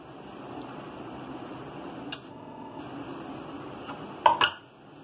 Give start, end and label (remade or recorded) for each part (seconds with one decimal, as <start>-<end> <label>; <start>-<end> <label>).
0.0-2.3 recorded; 2.3-2.8 remade; 2.8-5.0 recorded

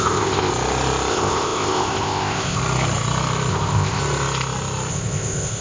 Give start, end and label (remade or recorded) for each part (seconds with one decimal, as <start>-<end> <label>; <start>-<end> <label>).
0.0-0.5 remade; 0.5-1.1 recorded; 1.1-2.6 remade; 2.6-3.5 recorded; 3.5-4.0 remade; 4.0-4.9 recorded; 4.9-5.6 remade

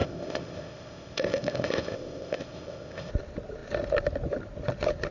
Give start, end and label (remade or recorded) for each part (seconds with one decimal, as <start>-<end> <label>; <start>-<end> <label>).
0.0-3.1 remade; 3.1-5.1 recorded

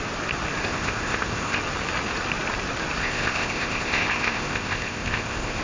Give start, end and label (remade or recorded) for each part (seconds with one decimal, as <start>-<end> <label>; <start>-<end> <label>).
0.0-0.6 recorded; 0.6-1.6 remade; 1.6-3.0 recorded; 3.0-5.6 remade